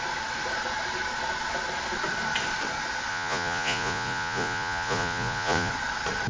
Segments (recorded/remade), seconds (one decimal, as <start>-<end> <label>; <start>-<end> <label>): 0.0-3.1 recorded; 3.1-5.7 remade; 5.7-6.3 recorded